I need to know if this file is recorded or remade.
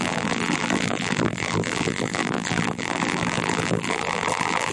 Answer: remade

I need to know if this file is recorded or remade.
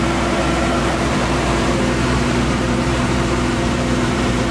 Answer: remade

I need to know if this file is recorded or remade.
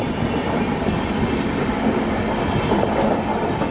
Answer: recorded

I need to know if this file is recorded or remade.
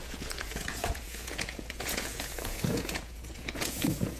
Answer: remade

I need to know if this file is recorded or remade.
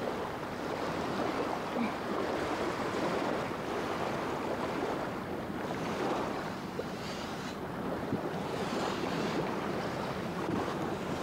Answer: remade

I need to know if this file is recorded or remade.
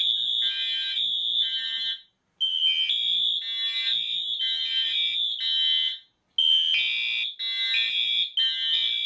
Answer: recorded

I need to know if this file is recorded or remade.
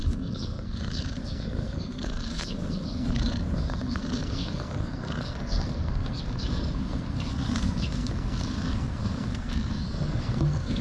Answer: remade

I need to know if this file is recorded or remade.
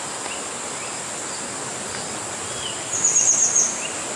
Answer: recorded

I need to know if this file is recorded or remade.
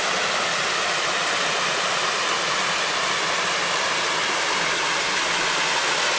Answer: recorded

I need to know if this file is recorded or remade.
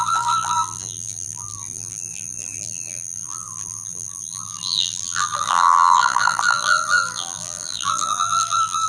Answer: remade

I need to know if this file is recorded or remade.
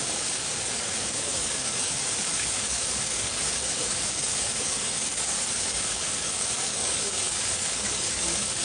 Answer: remade